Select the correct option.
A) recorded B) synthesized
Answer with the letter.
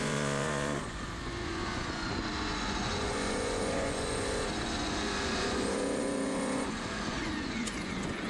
B